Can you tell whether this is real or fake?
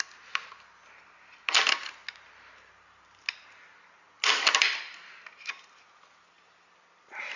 real